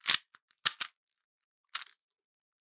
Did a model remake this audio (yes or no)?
no